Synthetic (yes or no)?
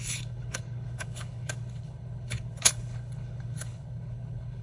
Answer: yes